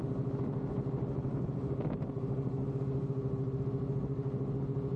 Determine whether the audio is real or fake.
real